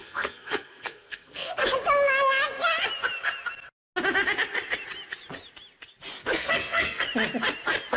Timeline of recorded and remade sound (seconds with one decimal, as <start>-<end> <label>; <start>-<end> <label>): 0.0-1.7 remade; 1.7-6.2 recorded; 6.2-7.1 remade; 7.1-8.0 recorded